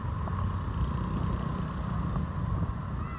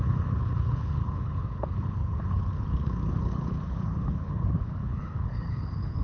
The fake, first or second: second